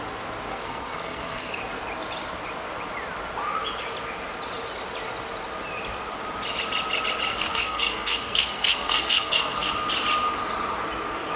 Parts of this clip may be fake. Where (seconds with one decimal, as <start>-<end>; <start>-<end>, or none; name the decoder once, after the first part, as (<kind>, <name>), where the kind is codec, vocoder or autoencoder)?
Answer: 0.5-1.6 (codec, SNAC); 7.3-9.7